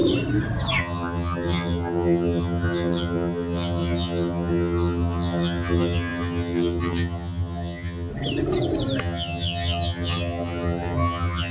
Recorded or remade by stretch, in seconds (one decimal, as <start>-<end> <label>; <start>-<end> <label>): 0.0-0.8 recorded; 0.8-8.1 remade; 8.1-9.0 recorded; 9.0-11.5 remade